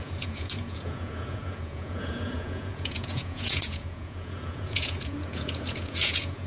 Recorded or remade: remade